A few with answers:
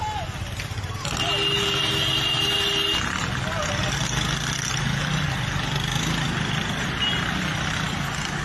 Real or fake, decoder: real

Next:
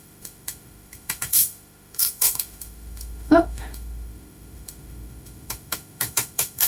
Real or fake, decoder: fake, autoencoder, DAC-VAE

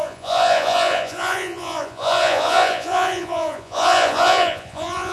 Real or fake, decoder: fake, vocoder, Vocos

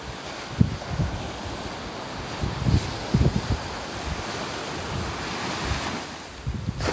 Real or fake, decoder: real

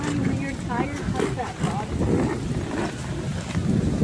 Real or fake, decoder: real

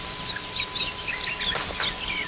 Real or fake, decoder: real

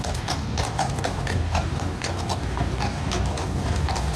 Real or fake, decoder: fake, codec, DAC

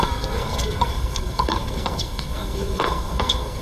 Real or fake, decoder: fake, codec, SNAC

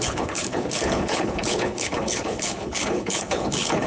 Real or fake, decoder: fake, codec, HILCodec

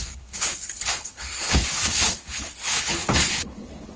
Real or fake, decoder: fake, codec, HILCodec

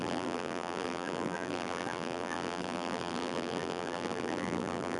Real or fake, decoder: fake, vocoder, BigVGAN v2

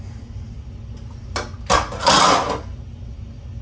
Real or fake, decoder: real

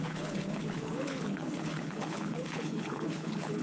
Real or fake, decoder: fake, codec, HILCodec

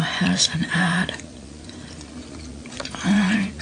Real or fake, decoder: fake, vocoder, Vocos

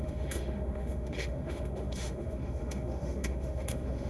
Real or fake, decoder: fake, autoencoder, DAC-VAE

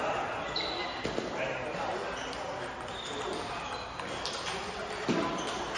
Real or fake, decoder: real